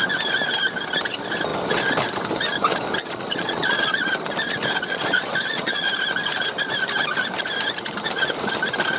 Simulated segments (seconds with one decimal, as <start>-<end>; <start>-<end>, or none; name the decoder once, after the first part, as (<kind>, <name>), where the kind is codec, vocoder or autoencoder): 3.0-4.1 (vocoder, Vocos); 4.8-5.9